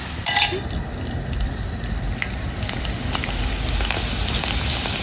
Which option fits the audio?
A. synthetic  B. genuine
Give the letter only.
B